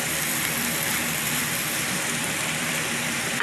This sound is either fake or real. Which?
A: fake